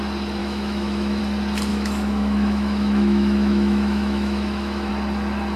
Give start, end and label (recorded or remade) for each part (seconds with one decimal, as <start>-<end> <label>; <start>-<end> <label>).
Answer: 0.0-0.4 recorded; 0.4-1.2 remade; 1.2-1.7 recorded; 1.7-4.9 remade; 4.9-5.6 recorded